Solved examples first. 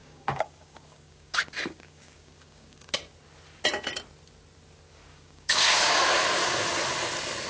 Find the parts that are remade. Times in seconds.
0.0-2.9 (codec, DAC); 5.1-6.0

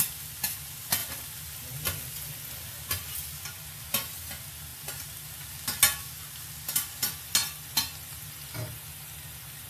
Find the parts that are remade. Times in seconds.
none

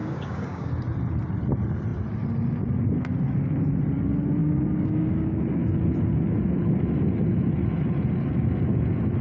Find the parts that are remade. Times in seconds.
0.0-0.7 (codec, DAC); 4.4-5.6